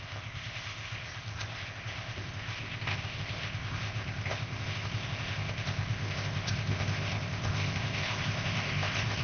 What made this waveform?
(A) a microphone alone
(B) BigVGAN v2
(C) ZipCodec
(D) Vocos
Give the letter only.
C